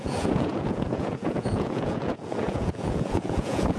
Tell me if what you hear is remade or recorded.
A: remade